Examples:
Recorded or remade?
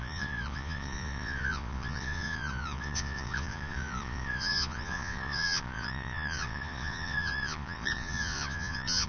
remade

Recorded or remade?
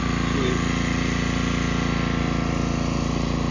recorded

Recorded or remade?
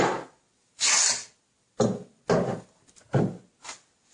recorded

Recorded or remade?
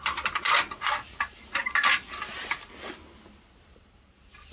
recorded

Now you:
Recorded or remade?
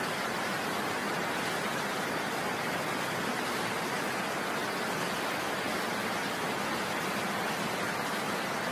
recorded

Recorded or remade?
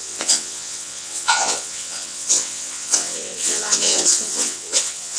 remade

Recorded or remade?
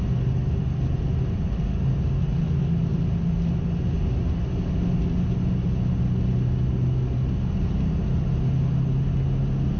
recorded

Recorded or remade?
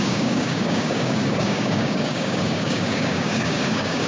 remade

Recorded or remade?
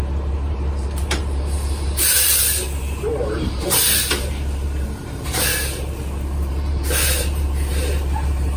remade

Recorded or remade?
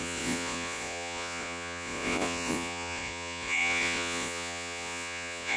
remade